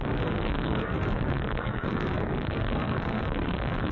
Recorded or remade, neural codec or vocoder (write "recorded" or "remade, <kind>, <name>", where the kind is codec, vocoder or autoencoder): remade, codec, SNAC